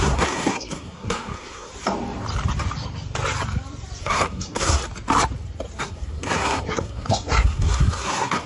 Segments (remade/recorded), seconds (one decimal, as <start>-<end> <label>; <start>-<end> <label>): 0.0-1.7 remade; 1.7-4.0 recorded; 4.0-4.8 remade; 4.8-5.8 recorded; 5.8-8.5 remade

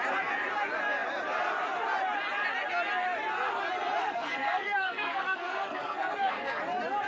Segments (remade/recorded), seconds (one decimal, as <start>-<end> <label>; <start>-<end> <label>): 0.0-4.0 recorded; 4.0-6.6 remade; 6.6-7.1 recorded